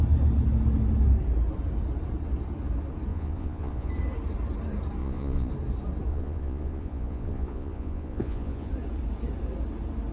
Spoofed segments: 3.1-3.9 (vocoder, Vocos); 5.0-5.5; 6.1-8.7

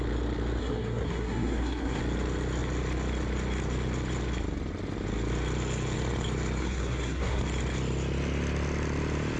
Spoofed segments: 0.6-2.0 (codec, SNAC); 6.6-7.4

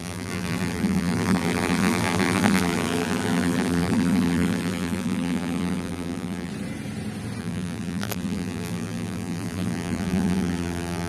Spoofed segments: 0.0-6.5 (vocoder, BigVGAN v2); 7.4-11.1

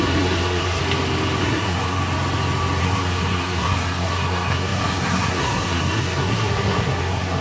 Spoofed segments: 0.0-0.8 (codec, SNAC); 1.4-2.0; 2.8-7.4